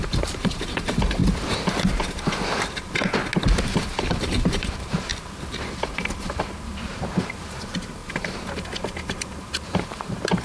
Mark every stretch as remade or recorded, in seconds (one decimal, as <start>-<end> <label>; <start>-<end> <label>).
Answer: 0.0-1.2 remade; 1.2-3.6 recorded; 3.6-5.1 remade; 5.1-6.4 recorded; 6.4-8.0 remade; 8.0-8.5 recorded; 8.5-10.4 remade